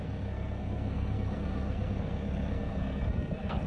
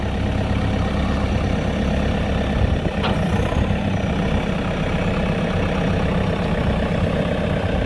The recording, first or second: second